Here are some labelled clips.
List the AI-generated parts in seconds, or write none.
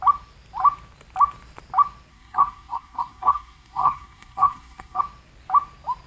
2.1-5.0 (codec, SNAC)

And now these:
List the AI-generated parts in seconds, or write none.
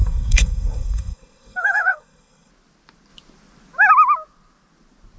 0.0-2.5 (codec, SNAC)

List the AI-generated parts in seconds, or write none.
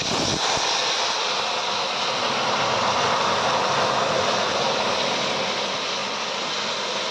none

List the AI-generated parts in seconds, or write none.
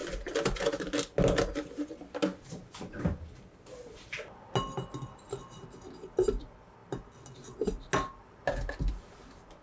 none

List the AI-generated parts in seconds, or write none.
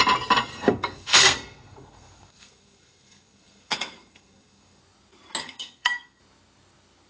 0.5-4.8 (codec, SNAC); 5.4-6.2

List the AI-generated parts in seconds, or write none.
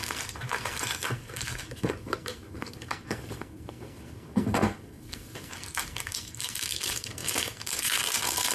0.0-8.5 (codec, SNAC)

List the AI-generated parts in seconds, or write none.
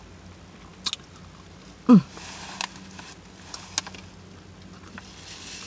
none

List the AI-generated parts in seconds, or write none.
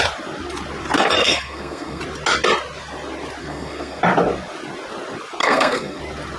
1.2-2.0 (codec, SNAC); 3.4-4.0; 5.4-6.0